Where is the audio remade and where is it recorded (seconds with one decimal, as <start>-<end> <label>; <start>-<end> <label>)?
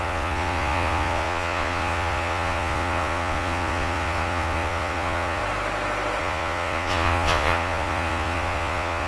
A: 0.0-5.4 remade; 5.4-6.2 recorded; 6.2-9.1 remade